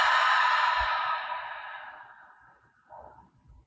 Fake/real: real